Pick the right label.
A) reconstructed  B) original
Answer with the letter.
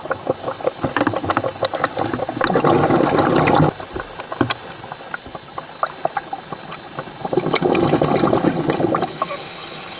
B